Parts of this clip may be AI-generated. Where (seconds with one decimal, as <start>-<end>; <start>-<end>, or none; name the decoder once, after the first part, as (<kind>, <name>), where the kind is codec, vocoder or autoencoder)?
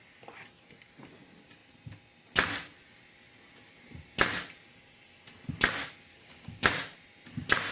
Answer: 6.1-6.7 (codec, DAC)